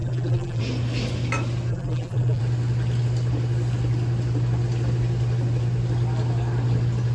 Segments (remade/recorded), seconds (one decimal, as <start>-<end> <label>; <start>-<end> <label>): 0.0-0.6 remade; 0.6-1.7 recorded; 1.7-2.4 remade; 2.4-7.1 recorded